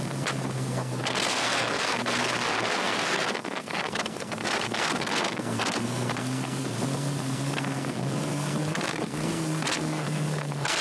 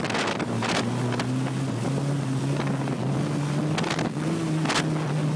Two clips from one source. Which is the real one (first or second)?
second